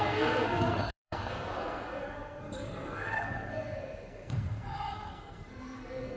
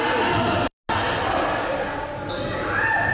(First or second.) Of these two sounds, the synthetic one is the first